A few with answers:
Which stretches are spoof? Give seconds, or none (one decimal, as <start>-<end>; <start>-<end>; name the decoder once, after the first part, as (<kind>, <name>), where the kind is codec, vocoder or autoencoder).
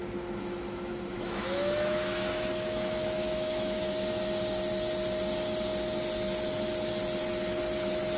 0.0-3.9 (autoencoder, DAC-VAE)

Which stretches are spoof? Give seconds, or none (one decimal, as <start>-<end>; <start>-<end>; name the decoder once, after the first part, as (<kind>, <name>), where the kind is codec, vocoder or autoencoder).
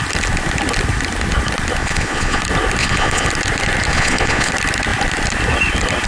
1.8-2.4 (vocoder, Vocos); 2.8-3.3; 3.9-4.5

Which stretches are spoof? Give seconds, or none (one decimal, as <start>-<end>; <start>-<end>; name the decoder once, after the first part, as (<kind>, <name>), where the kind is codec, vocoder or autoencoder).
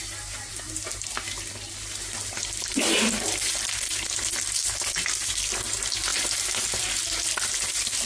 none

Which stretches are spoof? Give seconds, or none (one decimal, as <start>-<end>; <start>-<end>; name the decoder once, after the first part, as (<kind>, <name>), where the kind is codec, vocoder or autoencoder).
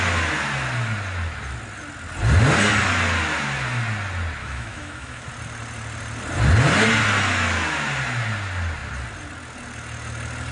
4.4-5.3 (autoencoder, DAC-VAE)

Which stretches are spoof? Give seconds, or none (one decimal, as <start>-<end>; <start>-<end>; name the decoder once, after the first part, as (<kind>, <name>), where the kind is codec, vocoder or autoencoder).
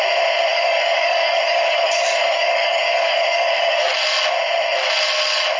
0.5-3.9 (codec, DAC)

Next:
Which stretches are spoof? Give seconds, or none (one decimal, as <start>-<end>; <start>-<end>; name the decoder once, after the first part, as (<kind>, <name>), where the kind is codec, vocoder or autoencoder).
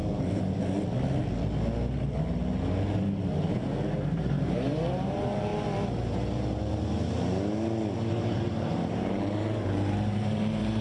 3.5-5.5 (vocoder, BigVGAN v2); 8.1-10.8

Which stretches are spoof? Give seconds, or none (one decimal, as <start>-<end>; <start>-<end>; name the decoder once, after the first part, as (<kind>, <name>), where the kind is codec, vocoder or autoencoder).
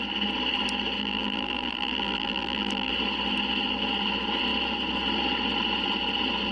1.0-2.9 (vocoder, BigVGAN v2)